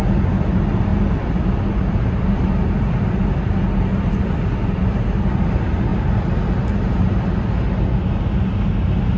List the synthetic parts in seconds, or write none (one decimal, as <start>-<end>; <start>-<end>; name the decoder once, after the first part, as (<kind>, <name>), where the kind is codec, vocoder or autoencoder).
0.9-5.2 (vocoder, BigVGAN v2); 5.9-6.4